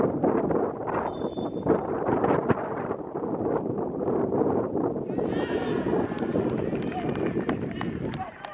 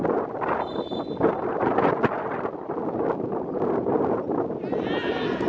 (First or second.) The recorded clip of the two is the second